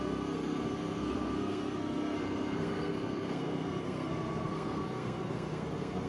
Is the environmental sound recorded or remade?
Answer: remade